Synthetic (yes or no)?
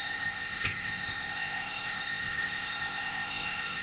yes